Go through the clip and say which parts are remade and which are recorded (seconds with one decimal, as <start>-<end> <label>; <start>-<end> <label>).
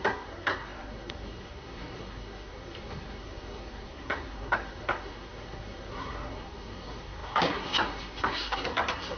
0.0-9.2 remade